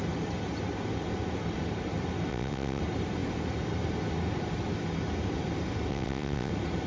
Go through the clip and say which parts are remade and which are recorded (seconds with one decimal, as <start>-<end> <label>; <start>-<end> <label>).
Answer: 0.0-2.3 recorded; 2.3-2.8 remade; 2.8-5.9 recorded; 5.9-6.5 remade; 6.5-6.9 recorded